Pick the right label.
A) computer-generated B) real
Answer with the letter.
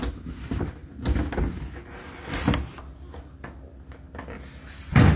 B